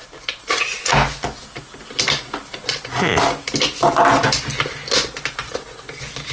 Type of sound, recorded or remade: recorded